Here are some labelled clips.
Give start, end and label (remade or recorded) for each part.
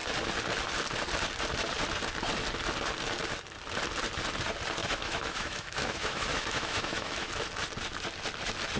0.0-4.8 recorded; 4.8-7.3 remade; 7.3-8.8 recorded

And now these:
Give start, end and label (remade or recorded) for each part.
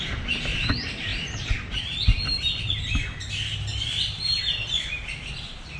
0.0-5.8 recorded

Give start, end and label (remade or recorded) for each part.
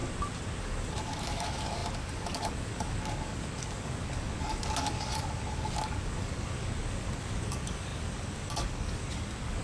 0.0-0.6 recorded; 0.6-9.6 remade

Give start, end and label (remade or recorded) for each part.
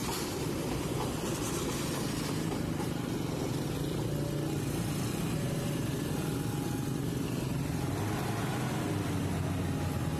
0.0-1.5 remade; 1.5-10.2 recorded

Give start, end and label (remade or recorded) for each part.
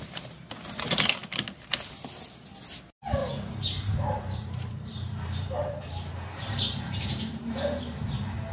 0.0-3.2 recorded; 3.2-7.8 remade; 7.8-8.5 recorded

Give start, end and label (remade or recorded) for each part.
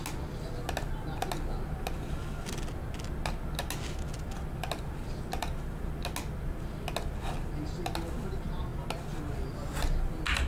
0.0-10.5 recorded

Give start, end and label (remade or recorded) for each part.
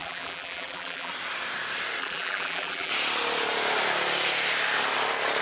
0.0-1.1 remade; 1.1-2.0 recorded; 2.0-2.9 remade; 2.9-5.4 recorded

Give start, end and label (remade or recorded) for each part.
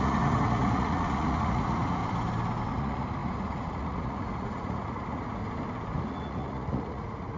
0.0-2.0 remade; 2.0-2.7 recorded; 2.7-5.4 remade; 5.4-6.0 recorded; 6.0-7.4 remade